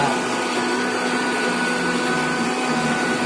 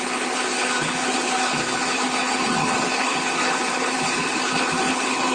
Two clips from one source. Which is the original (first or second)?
first